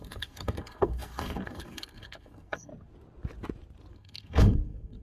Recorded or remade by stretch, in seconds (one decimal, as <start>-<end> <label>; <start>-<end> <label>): 0.0-2.7 remade; 2.7-3.9 recorded; 3.9-5.0 remade